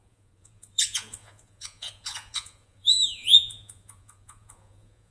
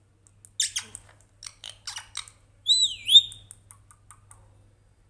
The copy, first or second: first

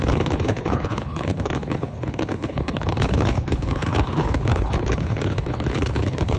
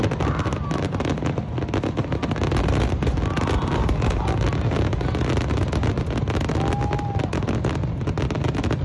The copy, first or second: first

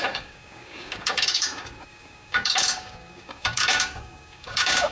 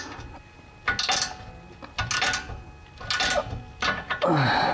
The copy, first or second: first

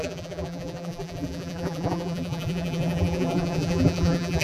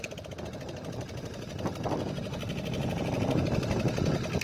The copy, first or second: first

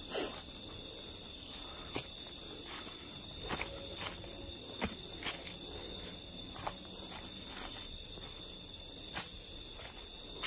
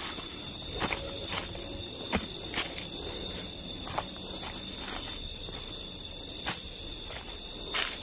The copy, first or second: second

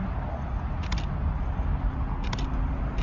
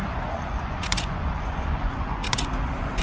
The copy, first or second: second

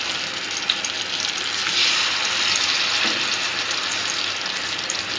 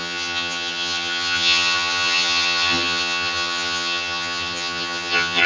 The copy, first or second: second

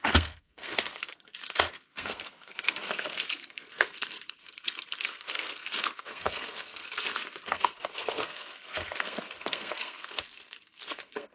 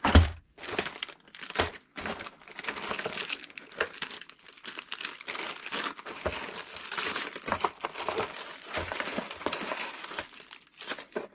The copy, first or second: first